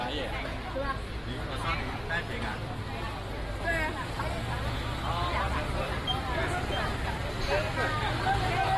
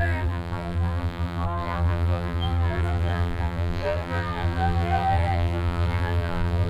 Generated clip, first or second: second